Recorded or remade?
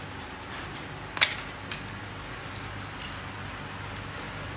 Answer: recorded